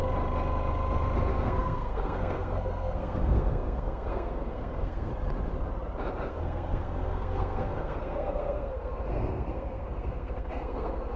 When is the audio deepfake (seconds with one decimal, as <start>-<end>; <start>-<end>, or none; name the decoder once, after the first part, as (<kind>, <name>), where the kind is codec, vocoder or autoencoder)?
1.3-5.1 (codec, SNAC); 6.1-11.2